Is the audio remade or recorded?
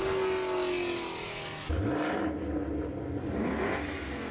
recorded